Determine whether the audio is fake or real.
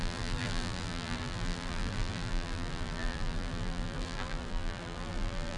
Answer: fake